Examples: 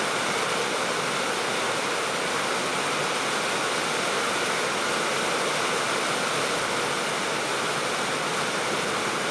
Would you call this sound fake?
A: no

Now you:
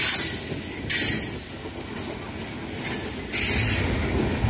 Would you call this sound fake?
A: no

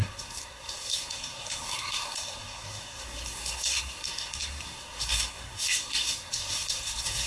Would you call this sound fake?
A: yes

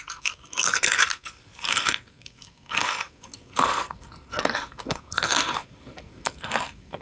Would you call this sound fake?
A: yes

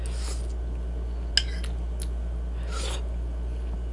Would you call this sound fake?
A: no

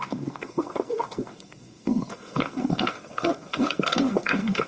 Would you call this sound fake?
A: yes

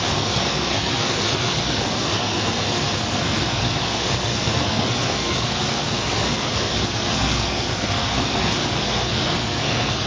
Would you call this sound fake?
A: yes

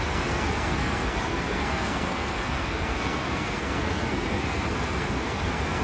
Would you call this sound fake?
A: yes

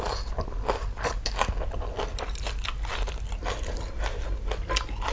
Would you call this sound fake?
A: no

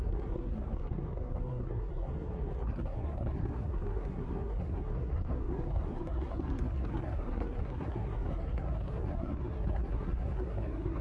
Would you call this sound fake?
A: yes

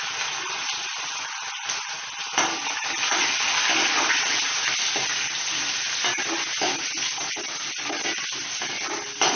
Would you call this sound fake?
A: no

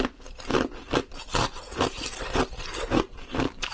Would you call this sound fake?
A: no